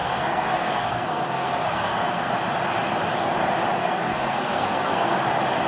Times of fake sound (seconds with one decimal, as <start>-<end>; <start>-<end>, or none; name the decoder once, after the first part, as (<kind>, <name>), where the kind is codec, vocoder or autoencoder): 0.0-2.3 (codec, SNAC); 3.8-5.2